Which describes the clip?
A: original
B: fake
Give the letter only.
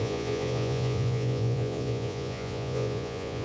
B